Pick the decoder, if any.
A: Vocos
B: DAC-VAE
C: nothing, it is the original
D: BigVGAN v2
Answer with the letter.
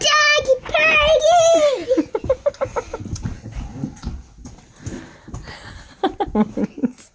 C